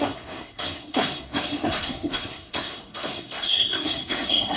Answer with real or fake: fake